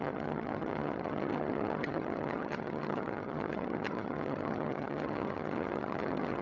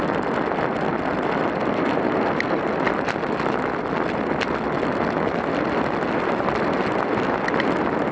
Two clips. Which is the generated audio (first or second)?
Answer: first